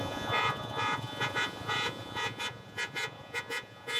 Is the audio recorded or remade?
remade